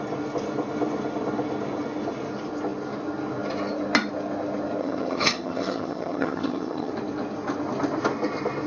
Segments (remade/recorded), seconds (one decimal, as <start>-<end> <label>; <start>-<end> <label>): 0.0-4.8 recorded; 4.8-6.9 remade; 6.9-8.7 recorded